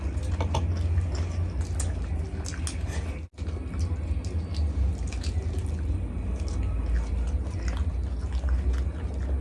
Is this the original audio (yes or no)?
yes